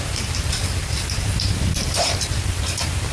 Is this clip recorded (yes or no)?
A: no